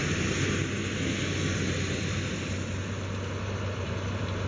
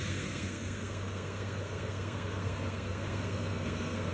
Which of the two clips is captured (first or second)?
first